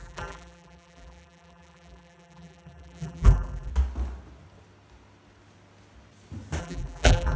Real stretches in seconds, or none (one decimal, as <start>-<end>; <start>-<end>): 3.7-6.6